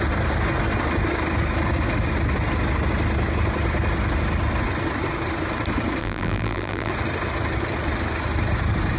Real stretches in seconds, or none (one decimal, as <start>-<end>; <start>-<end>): 0.0-6.0; 6.9-9.0